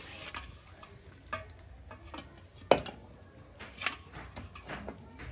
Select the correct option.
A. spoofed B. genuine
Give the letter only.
B